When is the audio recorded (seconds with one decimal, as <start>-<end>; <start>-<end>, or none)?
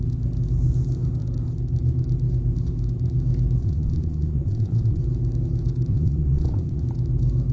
0.0-3.6; 5.0-5.9; 6.8-7.5